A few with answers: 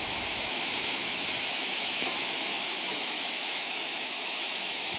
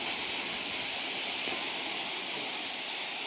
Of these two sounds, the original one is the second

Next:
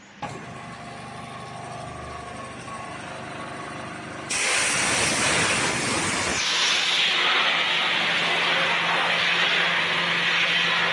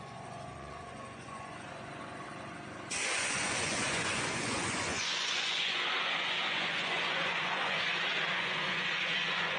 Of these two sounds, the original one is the first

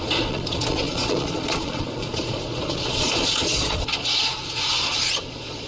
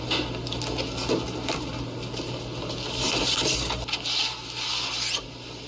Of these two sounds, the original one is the second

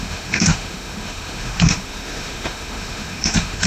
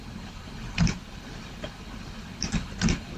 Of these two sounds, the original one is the second